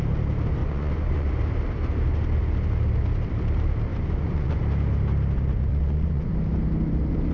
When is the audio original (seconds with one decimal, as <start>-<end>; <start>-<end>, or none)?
0.0-0.6; 1.3-3.9; 4.6-5.7; 6.3-7.3